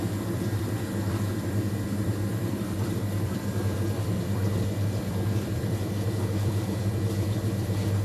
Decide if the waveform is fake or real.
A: fake